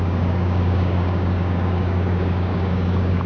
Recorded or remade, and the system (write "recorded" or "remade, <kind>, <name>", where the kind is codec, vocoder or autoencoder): remade, codec, DAC